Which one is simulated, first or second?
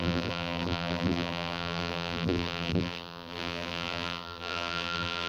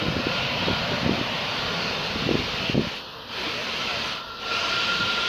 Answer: first